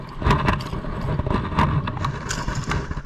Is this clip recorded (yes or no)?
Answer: yes